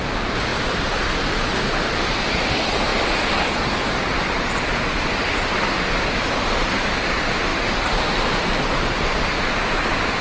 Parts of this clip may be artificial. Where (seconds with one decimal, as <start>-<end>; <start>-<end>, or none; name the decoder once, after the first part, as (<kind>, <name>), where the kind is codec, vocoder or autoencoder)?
none